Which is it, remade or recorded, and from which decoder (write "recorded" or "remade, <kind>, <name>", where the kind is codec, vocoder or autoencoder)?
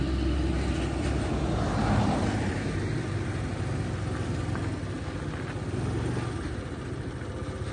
recorded